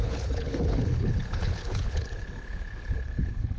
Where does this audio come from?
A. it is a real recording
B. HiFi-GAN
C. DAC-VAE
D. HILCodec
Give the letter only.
D